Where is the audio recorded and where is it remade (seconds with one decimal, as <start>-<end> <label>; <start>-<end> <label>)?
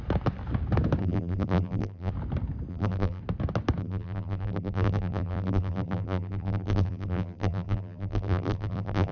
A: 0.0-1.0 recorded; 1.0-2.1 remade; 2.1-2.7 recorded; 2.7-3.2 remade; 3.2-3.8 recorded; 3.8-9.1 remade